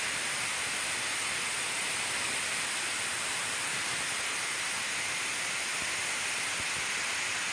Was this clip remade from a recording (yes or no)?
no